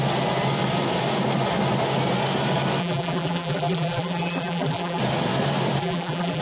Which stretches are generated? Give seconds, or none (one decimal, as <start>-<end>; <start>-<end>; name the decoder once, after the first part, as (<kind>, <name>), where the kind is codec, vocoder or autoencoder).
2.8-5.0 (vocoder, BigVGAN v2); 5.8-6.4